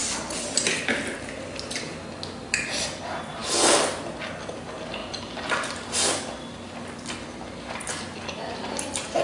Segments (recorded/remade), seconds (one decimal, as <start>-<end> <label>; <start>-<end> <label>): 0.0-9.2 recorded